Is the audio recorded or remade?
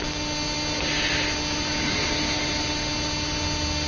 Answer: recorded